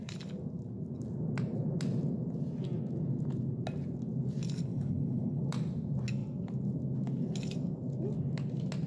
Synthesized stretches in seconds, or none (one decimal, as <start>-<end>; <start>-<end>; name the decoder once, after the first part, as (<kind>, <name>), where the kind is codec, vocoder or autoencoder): 4.7-5.4 (codec, HILCodec)